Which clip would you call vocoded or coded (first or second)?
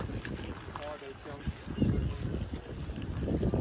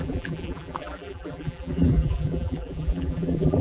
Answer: second